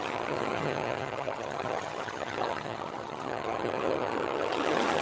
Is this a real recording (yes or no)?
no